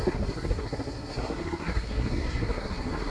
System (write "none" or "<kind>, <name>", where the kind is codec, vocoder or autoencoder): codec, SNAC